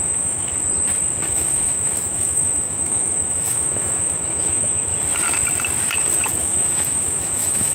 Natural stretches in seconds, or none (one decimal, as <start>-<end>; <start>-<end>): 0.5-1.3; 4.9-6.4